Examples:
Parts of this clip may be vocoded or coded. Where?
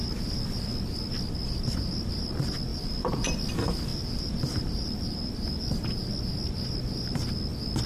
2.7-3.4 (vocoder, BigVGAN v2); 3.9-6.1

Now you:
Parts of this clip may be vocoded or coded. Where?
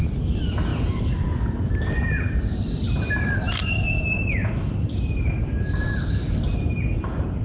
none